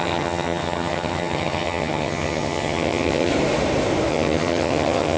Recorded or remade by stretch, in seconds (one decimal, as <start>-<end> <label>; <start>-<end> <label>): 0.0-3.3 remade; 3.3-4.1 recorded; 4.1-5.2 remade

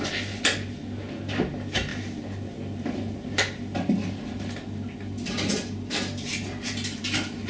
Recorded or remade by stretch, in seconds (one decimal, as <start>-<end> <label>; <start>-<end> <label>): 0.0-7.5 recorded